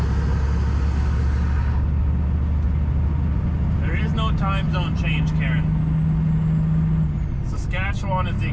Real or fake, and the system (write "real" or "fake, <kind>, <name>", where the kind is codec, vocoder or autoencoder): real